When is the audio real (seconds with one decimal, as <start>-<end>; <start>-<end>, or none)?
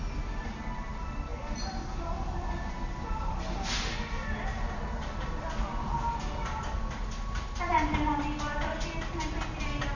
0.0-9.9